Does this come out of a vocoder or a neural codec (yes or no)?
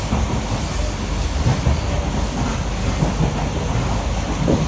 no